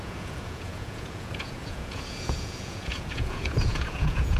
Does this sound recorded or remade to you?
remade